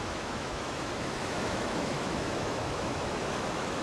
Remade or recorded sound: remade